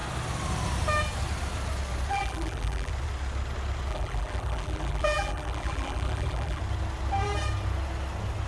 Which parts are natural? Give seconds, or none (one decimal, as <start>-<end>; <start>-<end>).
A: 0.0-2.1; 2.9-3.9; 6.6-8.5